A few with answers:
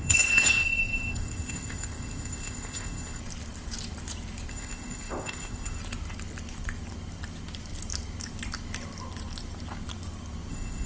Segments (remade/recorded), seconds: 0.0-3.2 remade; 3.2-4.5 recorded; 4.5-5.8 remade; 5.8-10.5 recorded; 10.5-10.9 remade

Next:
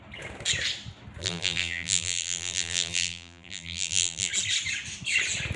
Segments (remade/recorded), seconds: 0.0-1.2 recorded; 1.2-4.3 remade; 4.3-5.6 recorded

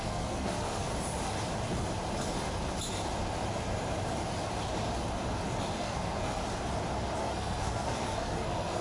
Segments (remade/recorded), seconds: 0.0-0.9 remade; 0.9-5.7 recorded; 5.7-6.4 remade; 6.4-7.2 recorded; 7.2-8.8 remade

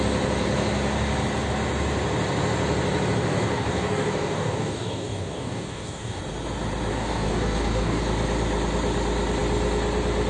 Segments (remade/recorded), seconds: 0.0-3.3 recorded; 3.3-6.2 remade; 6.2-6.9 recorded; 6.9-8.0 remade; 8.0-10.3 recorded

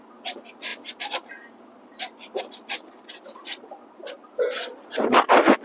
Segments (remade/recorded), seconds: 0.0-5.6 recorded

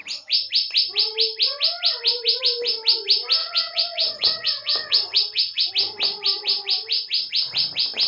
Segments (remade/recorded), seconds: 0.0-3.4 recorded; 3.4-5.7 remade; 5.7-8.1 recorded